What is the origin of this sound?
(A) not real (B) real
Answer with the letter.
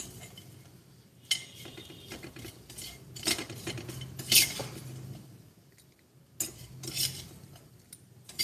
B